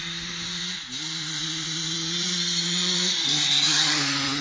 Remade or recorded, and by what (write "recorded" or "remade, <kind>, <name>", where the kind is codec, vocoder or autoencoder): remade, vocoder, BigVGAN v2